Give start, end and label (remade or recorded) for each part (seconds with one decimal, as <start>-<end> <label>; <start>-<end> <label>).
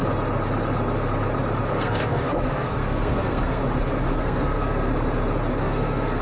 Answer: 0.0-1.7 recorded; 1.7-3.6 remade; 3.6-4.1 recorded; 4.1-4.9 remade; 4.9-5.6 recorded; 5.6-6.2 remade